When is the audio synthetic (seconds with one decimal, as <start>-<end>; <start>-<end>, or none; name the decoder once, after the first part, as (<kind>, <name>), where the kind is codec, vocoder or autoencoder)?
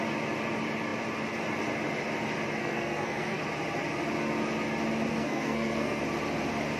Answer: 2.6-3.4 (codec, SNAC); 5.1-6.0